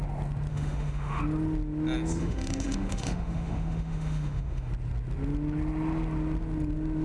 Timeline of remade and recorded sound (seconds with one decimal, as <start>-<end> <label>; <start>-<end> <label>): 0.0-0.5 recorded; 0.5-1.2 remade; 1.2-2.2 recorded; 2.2-4.7 remade; 4.7-7.0 recorded